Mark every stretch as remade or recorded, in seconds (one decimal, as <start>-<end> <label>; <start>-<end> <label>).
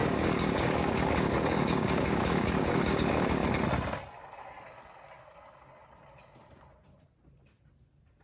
0.0-3.5 remade; 3.5-8.2 recorded